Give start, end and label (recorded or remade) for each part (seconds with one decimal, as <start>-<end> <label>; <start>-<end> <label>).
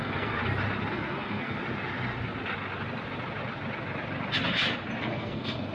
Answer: 0.0-0.4 remade; 0.4-0.9 recorded; 0.9-1.6 remade; 1.6-5.0 recorded; 5.0-5.7 remade